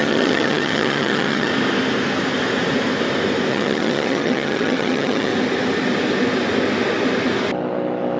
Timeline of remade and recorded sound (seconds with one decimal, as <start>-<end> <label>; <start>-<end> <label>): 0.0-1.5 remade; 1.5-3.5 recorded; 3.5-5.3 remade; 5.3-8.2 recorded